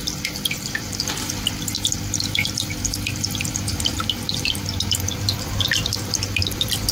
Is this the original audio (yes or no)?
yes